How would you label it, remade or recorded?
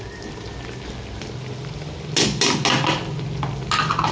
recorded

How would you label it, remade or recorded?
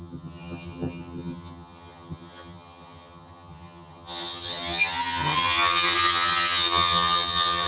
remade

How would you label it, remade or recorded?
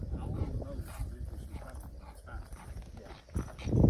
recorded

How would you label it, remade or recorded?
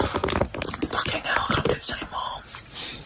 recorded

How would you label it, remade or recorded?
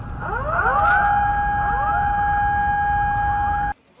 recorded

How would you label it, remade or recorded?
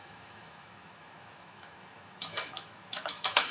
remade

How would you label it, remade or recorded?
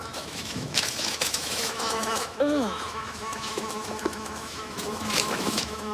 remade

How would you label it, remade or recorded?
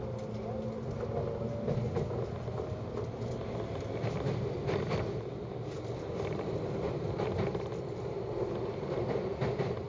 recorded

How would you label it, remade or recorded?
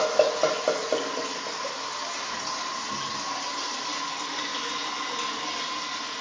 recorded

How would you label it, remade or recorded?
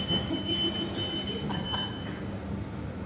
recorded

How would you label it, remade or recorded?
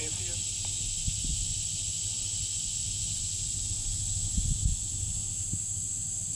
recorded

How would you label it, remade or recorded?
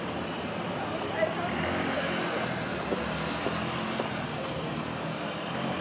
recorded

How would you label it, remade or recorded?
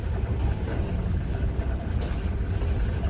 recorded